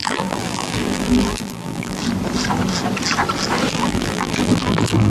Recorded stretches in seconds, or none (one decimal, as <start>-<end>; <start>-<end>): 2.0-3.7

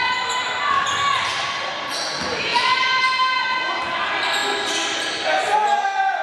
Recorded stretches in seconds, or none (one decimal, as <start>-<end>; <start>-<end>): 0.0-2.5; 3.8-6.2

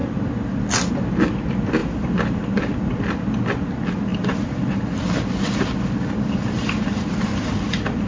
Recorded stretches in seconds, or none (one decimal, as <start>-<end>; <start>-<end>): 0.0-1.8; 2.9-4.1

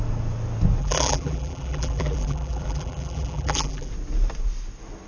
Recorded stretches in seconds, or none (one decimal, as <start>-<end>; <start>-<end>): 0.0-0.8; 3.9-5.1